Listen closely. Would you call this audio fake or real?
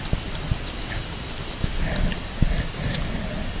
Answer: real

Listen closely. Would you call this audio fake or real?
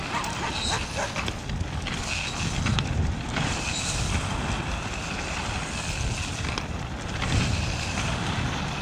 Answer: real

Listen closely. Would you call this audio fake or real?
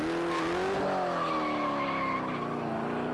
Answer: real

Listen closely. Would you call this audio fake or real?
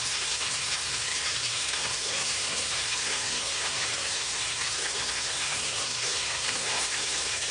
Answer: fake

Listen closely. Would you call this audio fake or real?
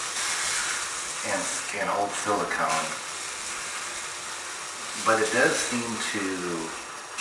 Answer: real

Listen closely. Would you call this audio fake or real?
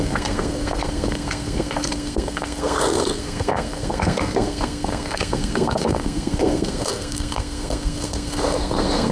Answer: fake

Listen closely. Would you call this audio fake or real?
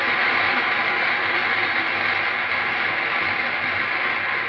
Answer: real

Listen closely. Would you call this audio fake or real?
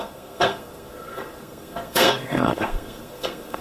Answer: fake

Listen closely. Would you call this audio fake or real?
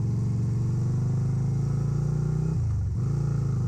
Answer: real